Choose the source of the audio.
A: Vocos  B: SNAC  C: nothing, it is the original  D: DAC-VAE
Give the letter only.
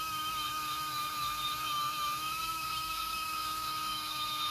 D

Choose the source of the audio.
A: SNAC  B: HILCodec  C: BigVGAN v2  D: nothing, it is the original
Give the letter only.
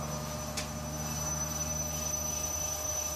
D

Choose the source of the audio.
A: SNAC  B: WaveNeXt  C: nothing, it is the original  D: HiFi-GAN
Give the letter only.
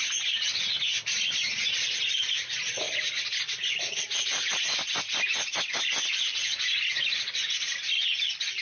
C